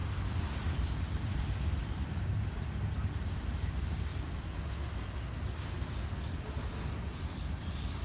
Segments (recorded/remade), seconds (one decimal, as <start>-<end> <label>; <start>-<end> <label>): 0.0-1.3 remade; 1.3-1.8 recorded; 1.8-2.7 remade; 2.7-8.0 recorded